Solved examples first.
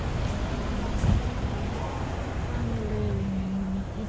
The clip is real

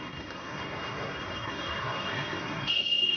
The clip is fake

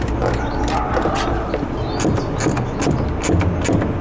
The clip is real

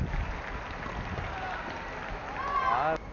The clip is real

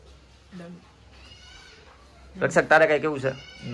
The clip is real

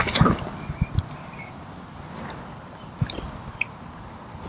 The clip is fake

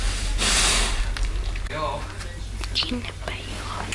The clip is real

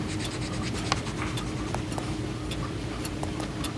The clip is real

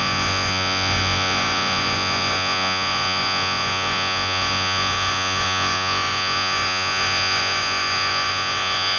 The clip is fake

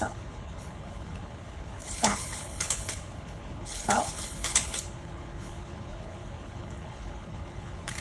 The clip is fake